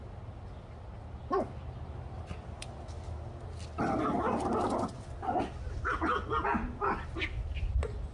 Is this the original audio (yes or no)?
yes